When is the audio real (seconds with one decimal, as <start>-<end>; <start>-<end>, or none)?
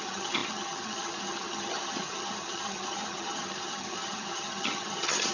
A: none